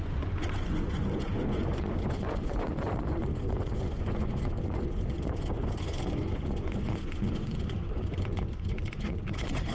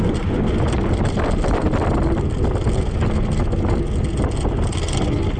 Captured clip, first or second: second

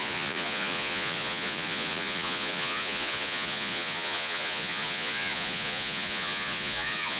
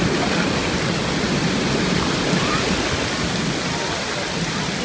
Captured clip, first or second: second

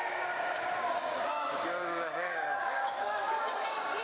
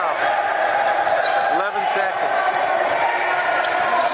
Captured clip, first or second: second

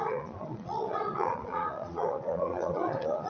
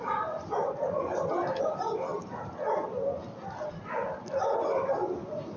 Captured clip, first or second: second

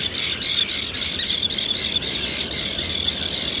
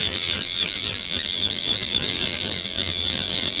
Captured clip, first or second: first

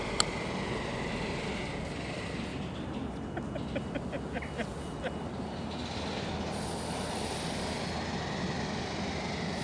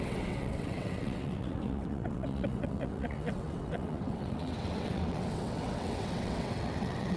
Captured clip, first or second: first